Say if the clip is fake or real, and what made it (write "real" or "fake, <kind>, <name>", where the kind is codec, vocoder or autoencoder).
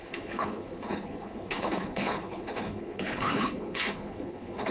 fake, codec, HILCodec